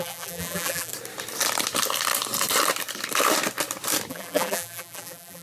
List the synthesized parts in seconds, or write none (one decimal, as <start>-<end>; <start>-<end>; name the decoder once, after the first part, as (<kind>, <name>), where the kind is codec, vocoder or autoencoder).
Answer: 0.0-0.9 (vocoder, BigVGAN v2); 4.1-5.4